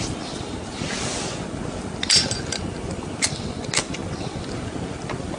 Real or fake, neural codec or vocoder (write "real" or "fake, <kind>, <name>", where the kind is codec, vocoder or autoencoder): real